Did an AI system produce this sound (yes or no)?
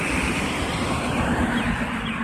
no